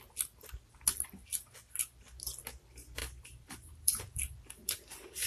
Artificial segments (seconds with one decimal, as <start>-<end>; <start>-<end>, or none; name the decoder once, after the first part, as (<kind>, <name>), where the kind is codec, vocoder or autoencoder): 3.0-4.0 (vocoder, BigVGAN v2)